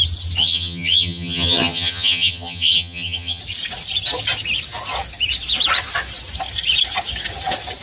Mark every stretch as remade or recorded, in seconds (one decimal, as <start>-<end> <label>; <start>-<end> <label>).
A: 0.0-0.4 recorded; 0.4-3.4 remade; 3.4-7.8 recorded